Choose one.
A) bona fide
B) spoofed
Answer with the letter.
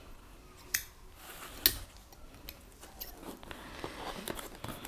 A